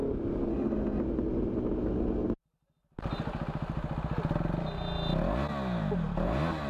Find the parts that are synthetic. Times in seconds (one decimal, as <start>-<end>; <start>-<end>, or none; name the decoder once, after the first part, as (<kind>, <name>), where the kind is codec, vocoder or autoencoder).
0.5-1.0 (autoencoder, DAC-VAE)